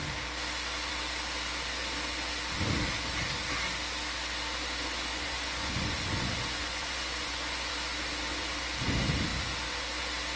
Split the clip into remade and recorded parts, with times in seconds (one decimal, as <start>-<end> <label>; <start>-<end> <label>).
0.0-5.1 recorded; 5.1-7.7 remade; 7.7-10.4 recorded